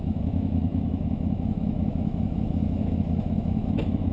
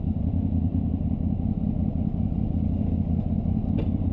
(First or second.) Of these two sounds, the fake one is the first